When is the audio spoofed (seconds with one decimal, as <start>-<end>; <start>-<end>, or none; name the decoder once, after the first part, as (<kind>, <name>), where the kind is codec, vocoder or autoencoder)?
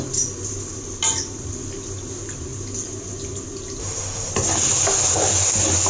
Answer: 3.8-4.3 (autoencoder, DAC-VAE)